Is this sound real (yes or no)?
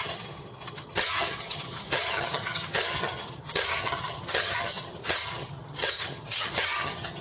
no